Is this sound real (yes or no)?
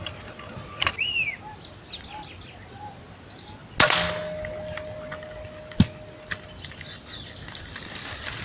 yes